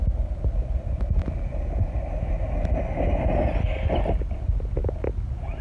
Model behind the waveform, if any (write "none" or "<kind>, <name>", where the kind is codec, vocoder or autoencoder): none